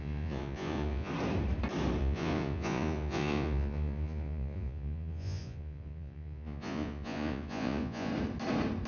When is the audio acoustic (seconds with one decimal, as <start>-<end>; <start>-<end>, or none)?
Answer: 1.1-2.0; 8.1-8.9